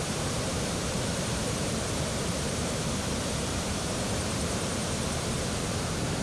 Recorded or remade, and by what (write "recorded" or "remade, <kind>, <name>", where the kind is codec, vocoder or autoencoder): remade, vocoder, BigVGAN v2